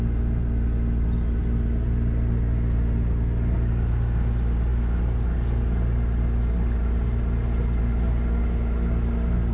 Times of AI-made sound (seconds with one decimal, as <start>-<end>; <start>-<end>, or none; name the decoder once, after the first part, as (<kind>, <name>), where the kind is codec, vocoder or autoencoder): none